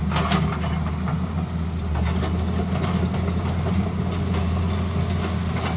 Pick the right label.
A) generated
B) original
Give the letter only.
B